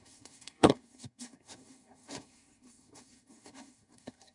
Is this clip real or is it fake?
fake